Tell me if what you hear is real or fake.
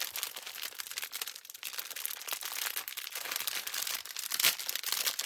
real